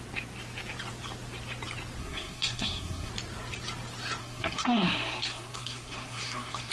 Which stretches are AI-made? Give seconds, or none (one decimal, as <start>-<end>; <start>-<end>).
2.0-3.1; 4.2-6.7

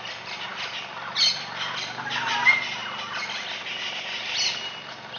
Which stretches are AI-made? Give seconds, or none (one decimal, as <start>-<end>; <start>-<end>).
none

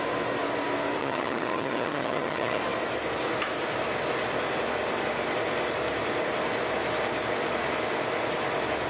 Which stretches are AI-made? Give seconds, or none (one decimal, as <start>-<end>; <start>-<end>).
1.0-2.6

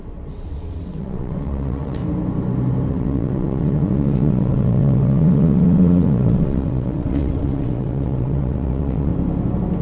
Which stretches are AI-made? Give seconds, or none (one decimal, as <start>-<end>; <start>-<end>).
0.0-2.0; 2.9-9.1

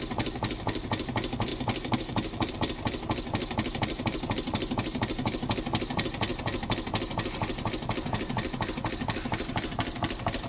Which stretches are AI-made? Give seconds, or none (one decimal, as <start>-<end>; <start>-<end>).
none

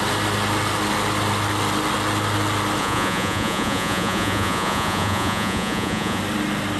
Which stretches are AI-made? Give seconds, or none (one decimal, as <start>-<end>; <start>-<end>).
2.8-6.2

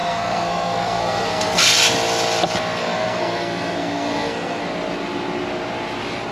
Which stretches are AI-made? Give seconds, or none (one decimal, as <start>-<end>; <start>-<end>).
0.0-1.7; 2.8-4.6